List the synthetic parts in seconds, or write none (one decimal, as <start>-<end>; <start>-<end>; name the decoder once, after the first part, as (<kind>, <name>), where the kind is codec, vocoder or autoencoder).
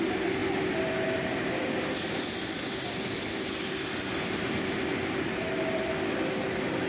none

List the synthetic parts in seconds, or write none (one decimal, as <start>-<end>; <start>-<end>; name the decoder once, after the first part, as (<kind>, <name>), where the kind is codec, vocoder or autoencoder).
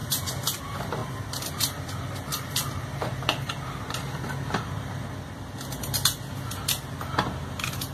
0.0-0.6 (vocoder, BigVGAN v2); 2.3-5.1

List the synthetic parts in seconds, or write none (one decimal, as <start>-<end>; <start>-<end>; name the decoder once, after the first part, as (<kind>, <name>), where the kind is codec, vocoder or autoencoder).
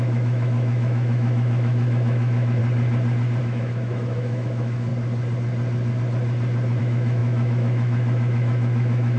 0.0-2.6 (autoencoder, DAC-VAE); 3.4-4.9; 6.8-9.2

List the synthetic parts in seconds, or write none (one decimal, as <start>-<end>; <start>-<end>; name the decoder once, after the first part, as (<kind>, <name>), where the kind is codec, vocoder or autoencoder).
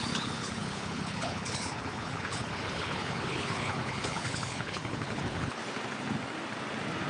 0.0-5.6 (codec, HILCodec)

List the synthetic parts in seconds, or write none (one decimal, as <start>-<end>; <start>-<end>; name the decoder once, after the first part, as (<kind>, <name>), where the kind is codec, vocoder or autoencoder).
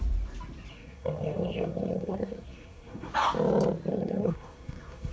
0.7-3.1 (codec, SNAC); 3.9-5.1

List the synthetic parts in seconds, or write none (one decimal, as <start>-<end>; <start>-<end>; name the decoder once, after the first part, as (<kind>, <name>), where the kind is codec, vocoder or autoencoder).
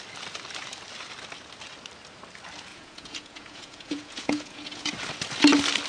2.7-4.9 (vocoder, Vocos)